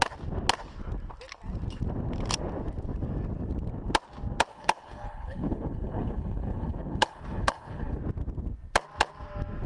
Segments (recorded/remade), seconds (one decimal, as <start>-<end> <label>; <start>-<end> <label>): 0.0-4.5 recorded; 4.5-8.0 remade; 8.0-9.7 recorded